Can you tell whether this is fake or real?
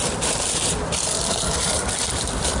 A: fake